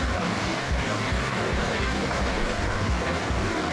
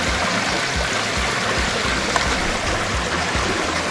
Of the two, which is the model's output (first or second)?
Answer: first